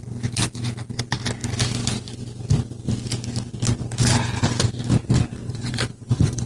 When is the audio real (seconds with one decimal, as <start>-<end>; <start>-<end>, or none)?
0.0-5.4